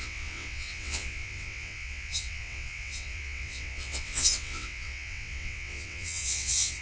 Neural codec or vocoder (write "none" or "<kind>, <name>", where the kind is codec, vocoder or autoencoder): vocoder, WaveNeXt